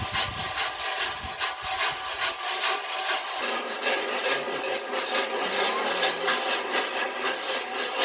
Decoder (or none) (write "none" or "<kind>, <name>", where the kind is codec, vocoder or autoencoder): none